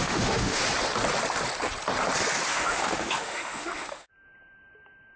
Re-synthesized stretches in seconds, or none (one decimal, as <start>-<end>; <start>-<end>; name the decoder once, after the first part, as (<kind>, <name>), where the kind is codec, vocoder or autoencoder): 0.0-0.6 (autoencoder, DAC-VAE); 2.5-4.1